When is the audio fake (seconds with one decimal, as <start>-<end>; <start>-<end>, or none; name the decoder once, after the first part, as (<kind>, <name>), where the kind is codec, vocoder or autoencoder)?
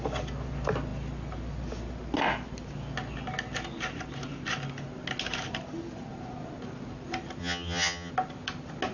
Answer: 7.4-8.1 (vocoder, HiFi-GAN)